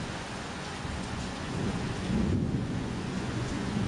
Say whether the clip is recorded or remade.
remade